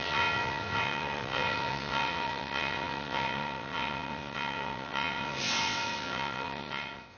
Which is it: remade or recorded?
remade